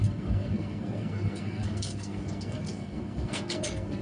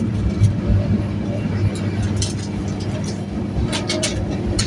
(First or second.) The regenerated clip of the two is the first